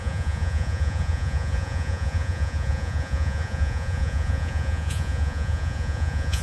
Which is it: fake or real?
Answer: fake